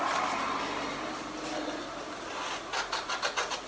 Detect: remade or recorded recorded